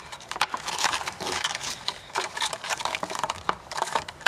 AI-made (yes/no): yes